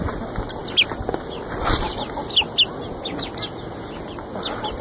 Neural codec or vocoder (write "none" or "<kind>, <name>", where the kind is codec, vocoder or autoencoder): none